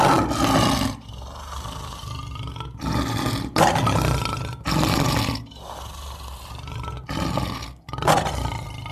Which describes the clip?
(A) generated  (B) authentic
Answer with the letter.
B